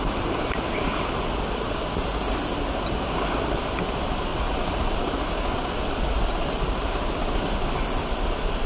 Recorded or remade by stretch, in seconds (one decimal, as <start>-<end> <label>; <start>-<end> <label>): 0.0-4.3 recorded; 4.3-5.3 remade; 5.3-8.7 recorded